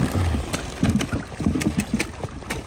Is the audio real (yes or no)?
yes